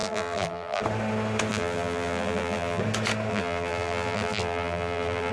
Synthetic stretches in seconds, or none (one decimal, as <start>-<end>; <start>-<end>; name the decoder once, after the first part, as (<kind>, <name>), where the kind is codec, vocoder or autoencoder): 0.0-0.8 (vocoder, BigVGAN v2); 1.5-2.8; 3.3-5.3